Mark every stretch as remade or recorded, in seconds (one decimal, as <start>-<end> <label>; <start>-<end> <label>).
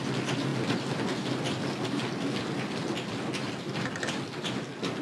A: 0.0-5.0 recorded